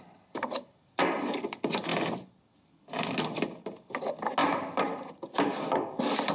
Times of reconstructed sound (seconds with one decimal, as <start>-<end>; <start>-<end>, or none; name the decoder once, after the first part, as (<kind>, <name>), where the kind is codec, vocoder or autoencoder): none